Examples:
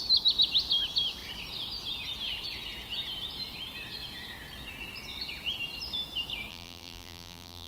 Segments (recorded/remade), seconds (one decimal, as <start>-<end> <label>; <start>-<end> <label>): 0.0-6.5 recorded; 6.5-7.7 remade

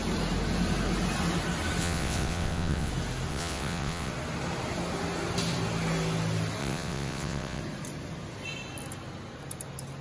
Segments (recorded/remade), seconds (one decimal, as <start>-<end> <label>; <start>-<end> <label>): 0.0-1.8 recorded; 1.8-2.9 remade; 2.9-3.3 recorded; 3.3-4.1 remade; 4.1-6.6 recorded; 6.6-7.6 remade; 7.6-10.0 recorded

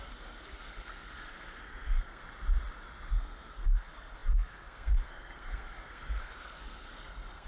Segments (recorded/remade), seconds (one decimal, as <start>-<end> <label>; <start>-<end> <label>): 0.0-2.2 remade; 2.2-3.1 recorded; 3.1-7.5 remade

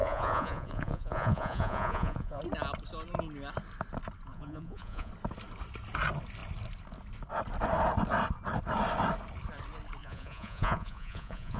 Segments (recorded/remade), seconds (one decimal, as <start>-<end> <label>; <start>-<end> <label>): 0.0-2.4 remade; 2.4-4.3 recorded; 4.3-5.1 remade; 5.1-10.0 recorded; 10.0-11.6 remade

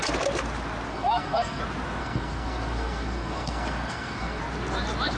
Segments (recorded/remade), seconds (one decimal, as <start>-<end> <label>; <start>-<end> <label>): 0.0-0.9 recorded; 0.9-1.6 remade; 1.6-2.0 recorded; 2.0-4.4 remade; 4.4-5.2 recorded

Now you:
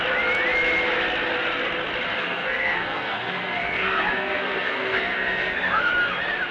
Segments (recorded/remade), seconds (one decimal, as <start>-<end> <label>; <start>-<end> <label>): 0.0-2.1 recorded; 2.1-5.9 remade; 5.9-6.5 recorded

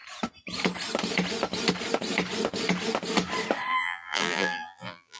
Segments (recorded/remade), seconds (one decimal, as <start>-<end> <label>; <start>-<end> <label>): 0.0-3.7 recorded; 3.7-5.2 remade

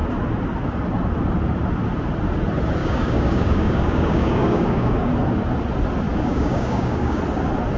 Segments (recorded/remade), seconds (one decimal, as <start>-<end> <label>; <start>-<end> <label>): 0.0-2.8 recorded; 2.8-5.1 remade; 5.1-6.1 recorded; 6.1-7.2 remade; 7.2-7.8 recorded